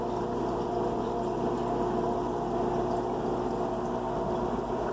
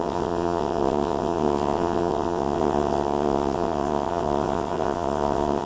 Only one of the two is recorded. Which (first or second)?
first